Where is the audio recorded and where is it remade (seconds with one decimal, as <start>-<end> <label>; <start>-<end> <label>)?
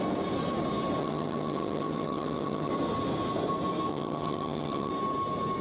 0.0-1.0 recorded; 1.0-2.7 remade; 2.7-3.9 recorded; 3.9-4.9 remade; 4.9-5.6 recorded